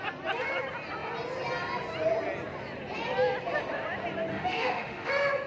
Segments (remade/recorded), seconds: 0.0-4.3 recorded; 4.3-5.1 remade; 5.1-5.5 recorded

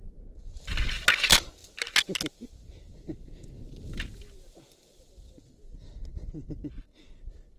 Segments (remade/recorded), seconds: 0.0-7.6 recorded

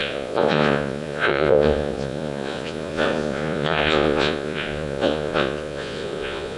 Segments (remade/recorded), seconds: 0.0-6.6 remade

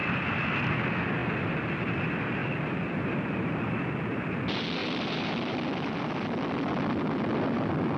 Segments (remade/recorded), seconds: 0.0-1.2 recorded; 1.2-1.9 remade; 1.9-2.4 recorded; 2.4-3.4 remade; 3.4-4.8 recorded; 4.8-8.0 remade

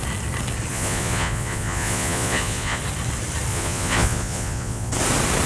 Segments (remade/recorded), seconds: 0.0-0.7 recorded; 0.7-2.8 remade; 2.8-3.5 recorded; 3.5-4.9 remade; 4.9-5.5 recorded

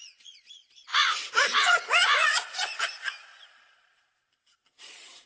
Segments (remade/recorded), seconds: 0.0-2.7 remade; 2.7-3.4 recorded; 3.4-5.3 remade

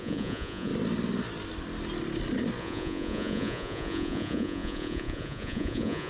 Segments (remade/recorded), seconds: 0.0-0.7 remade; 0.7-2.6 recorded; 2.6-6.1 remade